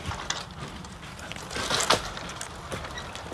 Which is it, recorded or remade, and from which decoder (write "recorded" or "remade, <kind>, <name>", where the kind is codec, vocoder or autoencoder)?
recorded